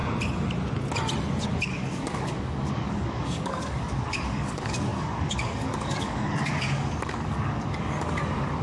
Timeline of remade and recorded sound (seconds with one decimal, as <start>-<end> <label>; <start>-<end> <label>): 0.0-1.5 recorded; 1.5-8.6 remade

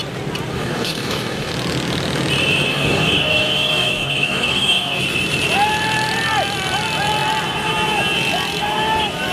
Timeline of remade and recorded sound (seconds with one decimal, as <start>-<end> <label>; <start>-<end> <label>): 0.0-0.5 recorded; 0.5-1.5 remade; 1.5-2.7 recorded; 2.7-5.0 remade; 5.0-9.3 recorded